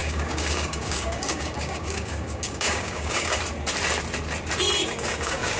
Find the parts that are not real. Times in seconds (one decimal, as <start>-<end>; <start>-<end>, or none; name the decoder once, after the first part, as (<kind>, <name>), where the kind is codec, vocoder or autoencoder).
0.0-3.4 (codec, DAC); 4.8-5.6